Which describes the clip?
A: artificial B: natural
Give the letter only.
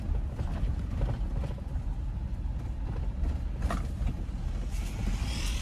B